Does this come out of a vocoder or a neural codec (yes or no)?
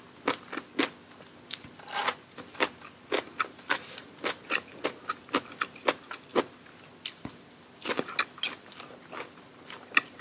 no